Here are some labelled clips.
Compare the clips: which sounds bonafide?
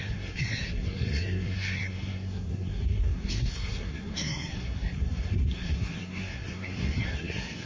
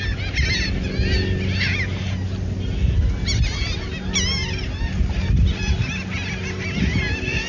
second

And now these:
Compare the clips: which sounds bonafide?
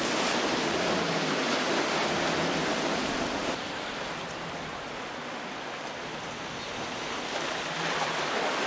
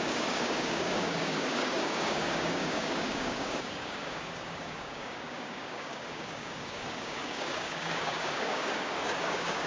first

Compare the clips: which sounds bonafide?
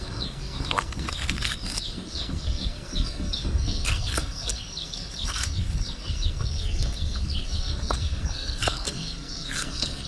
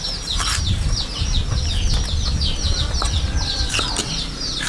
second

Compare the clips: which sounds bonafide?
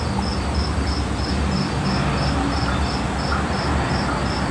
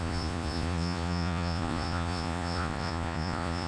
first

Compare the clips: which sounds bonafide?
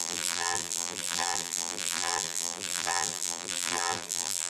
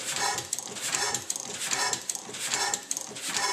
second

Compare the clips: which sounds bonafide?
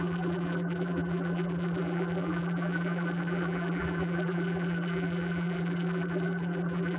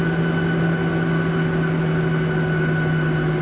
second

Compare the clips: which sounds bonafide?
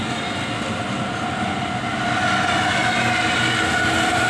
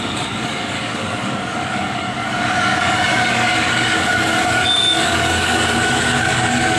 first